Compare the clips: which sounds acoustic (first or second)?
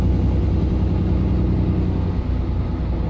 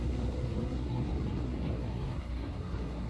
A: first